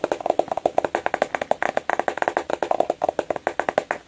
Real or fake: real